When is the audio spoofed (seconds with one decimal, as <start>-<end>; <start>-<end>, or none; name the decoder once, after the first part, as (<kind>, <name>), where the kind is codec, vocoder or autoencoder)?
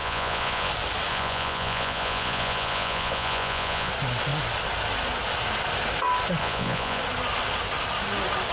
0.0-0.7 (vocoder, Vocos); 1.1-3.9; 6.4-7.0